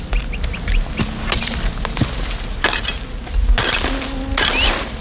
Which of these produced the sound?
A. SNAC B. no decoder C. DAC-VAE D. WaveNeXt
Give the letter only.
B